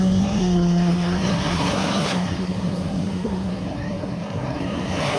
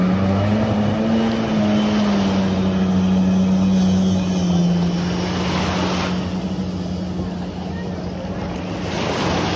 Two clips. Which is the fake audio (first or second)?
first